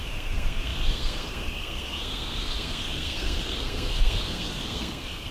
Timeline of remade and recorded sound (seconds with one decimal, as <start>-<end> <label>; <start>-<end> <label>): 0.0-5.3 remade